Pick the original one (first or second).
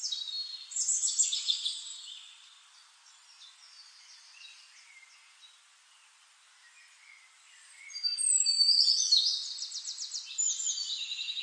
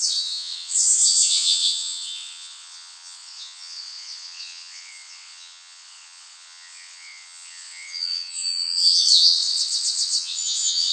first